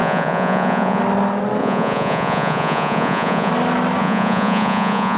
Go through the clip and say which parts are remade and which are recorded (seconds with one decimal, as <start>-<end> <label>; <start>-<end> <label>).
0.0-1.0 remade; 1.0-1.6 recorded; 1.6-3.5 remade; 3.5-4.0 recorded; 4.0-5.2 remade